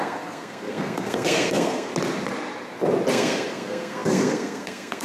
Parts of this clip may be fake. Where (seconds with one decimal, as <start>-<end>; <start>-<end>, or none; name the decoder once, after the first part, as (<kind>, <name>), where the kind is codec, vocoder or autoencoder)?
0.0-1.9 (codec, SNAC); 3.1-5.0